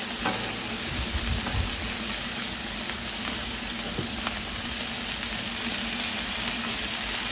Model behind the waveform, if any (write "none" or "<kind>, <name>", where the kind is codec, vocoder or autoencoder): none